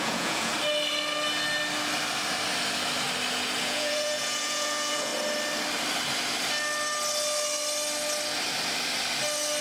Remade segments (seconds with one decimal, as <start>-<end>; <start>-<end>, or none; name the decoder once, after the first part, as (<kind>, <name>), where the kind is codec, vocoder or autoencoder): 0.0-0.5 (vocoder, Vocos); 3.6-5.1